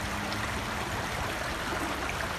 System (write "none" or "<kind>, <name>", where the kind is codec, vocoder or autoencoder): none